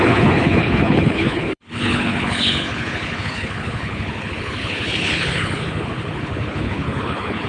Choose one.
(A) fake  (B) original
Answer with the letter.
A